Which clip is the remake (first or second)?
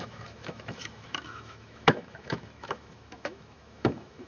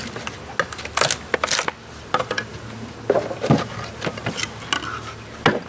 first